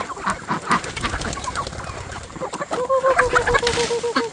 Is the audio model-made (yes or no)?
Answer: no